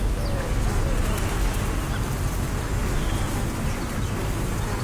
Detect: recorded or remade recorded